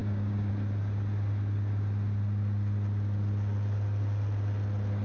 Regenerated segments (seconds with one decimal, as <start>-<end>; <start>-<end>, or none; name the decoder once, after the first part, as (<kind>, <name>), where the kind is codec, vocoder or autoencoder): 0.0-0.5 (codec, DAC)